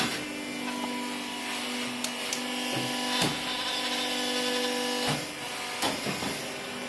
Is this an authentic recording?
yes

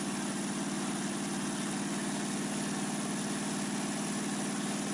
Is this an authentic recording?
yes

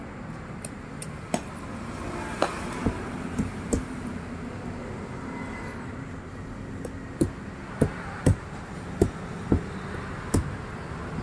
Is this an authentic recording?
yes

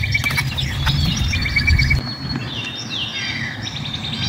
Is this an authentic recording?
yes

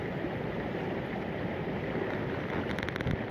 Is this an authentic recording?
yes